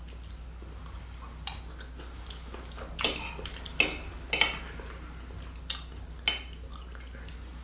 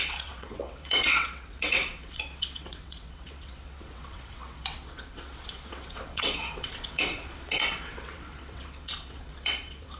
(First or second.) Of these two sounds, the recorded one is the first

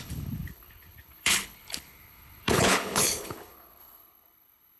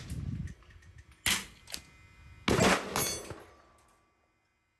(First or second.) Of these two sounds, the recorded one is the second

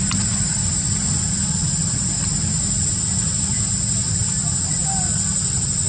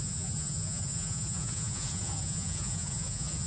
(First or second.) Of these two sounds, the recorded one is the first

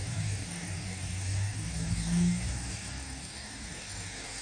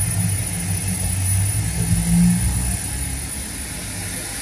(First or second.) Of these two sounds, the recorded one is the second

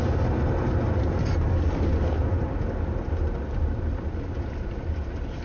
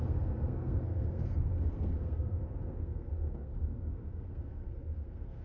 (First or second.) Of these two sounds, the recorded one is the first